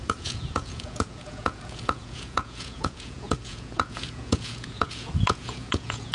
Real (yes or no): no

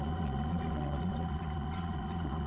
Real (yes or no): no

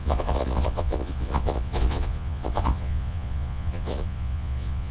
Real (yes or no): no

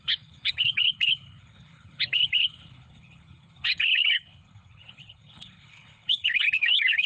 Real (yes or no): no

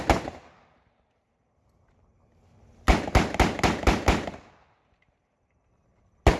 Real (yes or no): yes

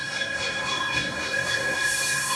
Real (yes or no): no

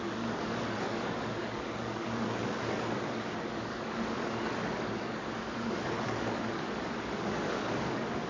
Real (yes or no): no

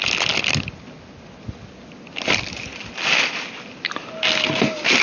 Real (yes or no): yes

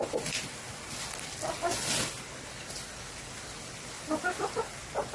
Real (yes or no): yes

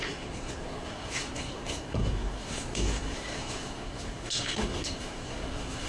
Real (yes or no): no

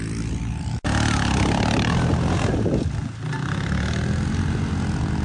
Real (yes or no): yes